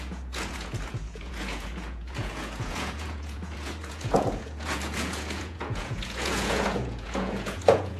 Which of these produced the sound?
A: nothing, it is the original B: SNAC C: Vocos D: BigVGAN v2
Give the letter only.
C